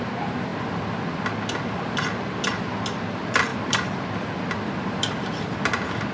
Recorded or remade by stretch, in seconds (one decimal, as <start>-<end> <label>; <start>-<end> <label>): 0.0-0.5 remade; 0.5-1.6 recorded; 1.6-6.1 remade